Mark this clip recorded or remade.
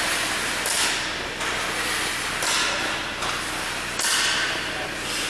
recorded